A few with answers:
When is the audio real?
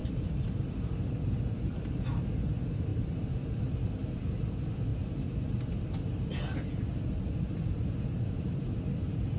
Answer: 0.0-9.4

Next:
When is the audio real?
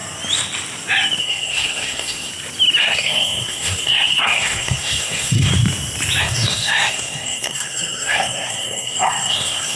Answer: 0.0-1.2; 2.3-2.8; 5.5-6.2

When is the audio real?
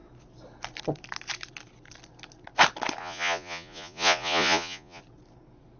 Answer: 0.0-3.0; 5.0-5.8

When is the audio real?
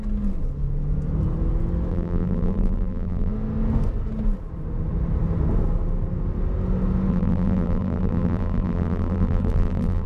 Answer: 0.0-1.9; 3.3-7.1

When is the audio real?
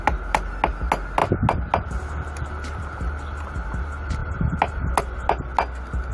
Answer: 0.0-6.1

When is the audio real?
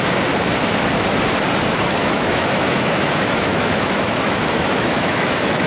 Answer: 0.0-2.0